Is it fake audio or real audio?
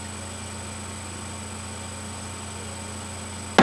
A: real